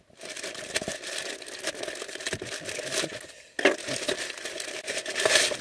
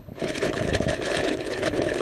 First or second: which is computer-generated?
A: second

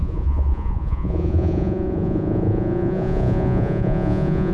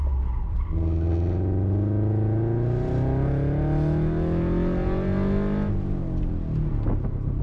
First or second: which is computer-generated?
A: first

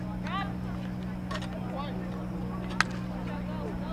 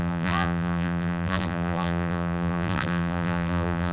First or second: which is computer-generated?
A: second